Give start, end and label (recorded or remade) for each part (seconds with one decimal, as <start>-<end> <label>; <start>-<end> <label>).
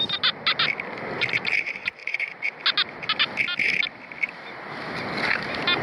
0.0-2.0 recorded; 2.0-2.5 remade; 2.5-5.8 recorded